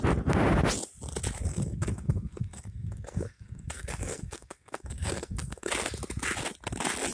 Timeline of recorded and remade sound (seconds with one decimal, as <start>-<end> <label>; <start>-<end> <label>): 0.0-1.5 recorded; 1.5-5.7 remade; 5.7-7.1 recorded